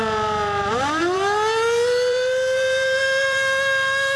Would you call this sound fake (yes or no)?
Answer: yes